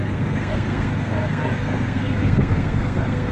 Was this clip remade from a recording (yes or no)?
yes